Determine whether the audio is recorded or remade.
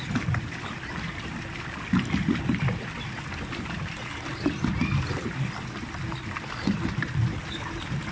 recorded